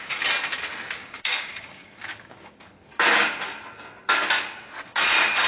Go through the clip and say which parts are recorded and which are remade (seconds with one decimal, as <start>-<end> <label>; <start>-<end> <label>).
0.0-1.0 recorded; 1.0-2.7 remade; 2.7-5.5 recorded